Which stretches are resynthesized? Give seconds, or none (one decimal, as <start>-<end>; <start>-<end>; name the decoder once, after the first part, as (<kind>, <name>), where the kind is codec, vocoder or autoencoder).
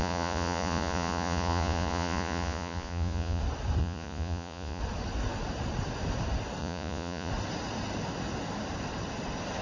0.0-3.4 (vocoder, Vocos); 3.8-4.8; 6.6-7.3